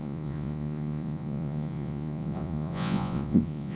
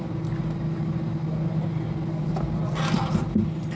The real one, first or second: second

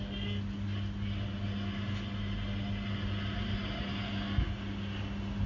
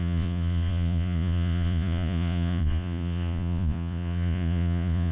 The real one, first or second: first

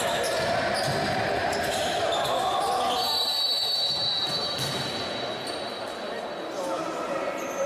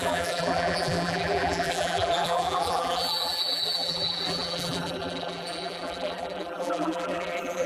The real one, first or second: first